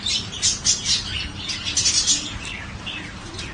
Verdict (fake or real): fake